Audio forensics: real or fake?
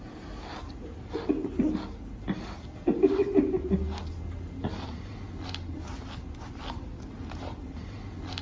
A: real